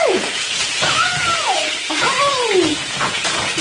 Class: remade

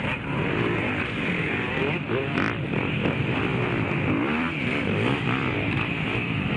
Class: remade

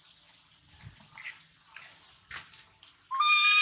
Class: recorded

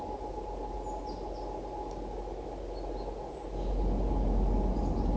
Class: recorded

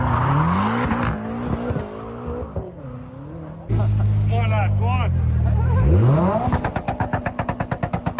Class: recorded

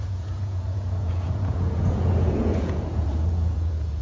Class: remade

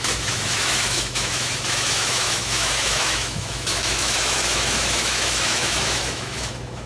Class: remade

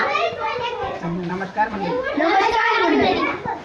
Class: remade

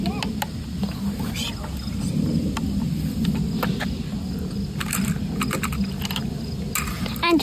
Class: recorded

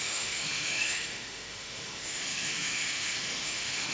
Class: remade